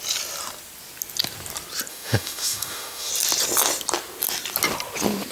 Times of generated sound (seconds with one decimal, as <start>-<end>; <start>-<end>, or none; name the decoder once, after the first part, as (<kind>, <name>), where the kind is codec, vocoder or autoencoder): 1.9-3.1 (autoencoder, DAC-VAE)